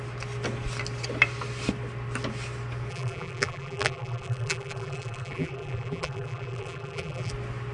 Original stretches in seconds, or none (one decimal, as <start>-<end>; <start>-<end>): 0.0-2.9; 7.3-7.7